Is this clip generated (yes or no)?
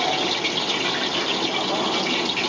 no